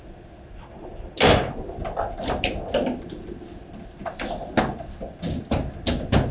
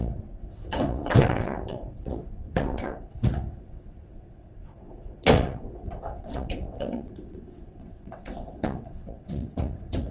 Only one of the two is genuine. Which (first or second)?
first